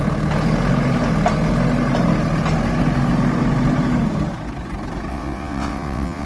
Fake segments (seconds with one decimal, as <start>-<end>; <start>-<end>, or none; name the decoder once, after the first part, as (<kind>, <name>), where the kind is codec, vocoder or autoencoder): 5.1-6.3 (vocoder, WaveNeXt)